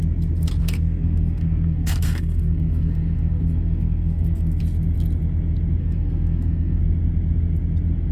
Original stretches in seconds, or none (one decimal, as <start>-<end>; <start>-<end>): 0.0-0.6; 4.6-5.8; 6.8-8.1